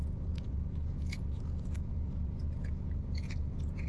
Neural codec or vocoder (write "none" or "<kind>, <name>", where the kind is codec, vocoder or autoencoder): vocoder, Vocos